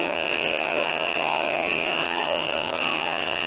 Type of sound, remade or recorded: remade